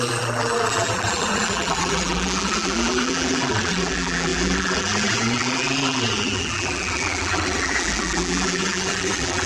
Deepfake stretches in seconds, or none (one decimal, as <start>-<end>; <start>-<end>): 0.0-9.5

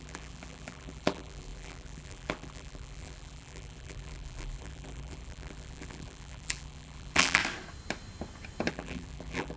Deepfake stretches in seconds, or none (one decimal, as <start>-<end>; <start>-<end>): 0.0-7.4; 8.7-9.6